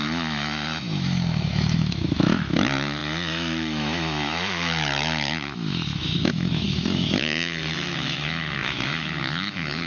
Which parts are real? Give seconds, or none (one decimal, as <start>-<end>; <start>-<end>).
none